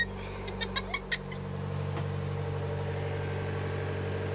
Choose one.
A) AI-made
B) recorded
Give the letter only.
B